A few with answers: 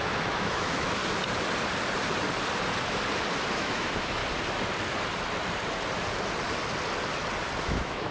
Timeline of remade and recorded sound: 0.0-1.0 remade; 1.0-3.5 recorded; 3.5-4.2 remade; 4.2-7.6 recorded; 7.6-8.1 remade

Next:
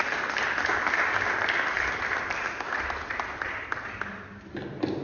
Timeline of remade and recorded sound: 0.0-5.0 recorded

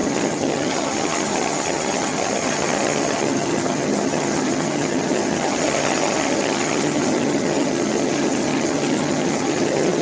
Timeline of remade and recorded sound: 0.0-10.0 remade

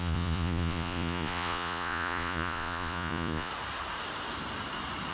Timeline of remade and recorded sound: 0.0-3.5 remade; 3.5-5.1 recorded